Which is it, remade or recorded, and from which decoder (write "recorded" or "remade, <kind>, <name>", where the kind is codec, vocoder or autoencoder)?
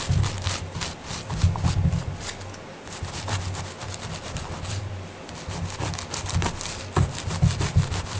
recorded